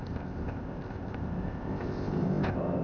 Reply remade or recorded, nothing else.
remade